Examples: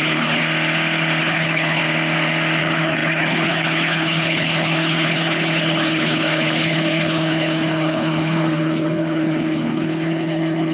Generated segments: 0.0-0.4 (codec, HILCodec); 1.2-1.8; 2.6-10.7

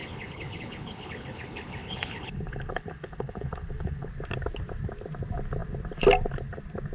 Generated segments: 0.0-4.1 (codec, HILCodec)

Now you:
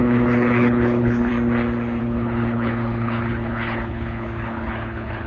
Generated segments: 0.0-1.3 (codec, HILCodec); 2.0-5.3